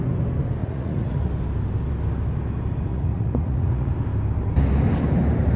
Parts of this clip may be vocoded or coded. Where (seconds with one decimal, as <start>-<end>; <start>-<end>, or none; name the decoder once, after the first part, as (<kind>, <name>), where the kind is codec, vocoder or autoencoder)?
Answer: 0.6-1.3 (vocoder, Vocos); 2.9-3.9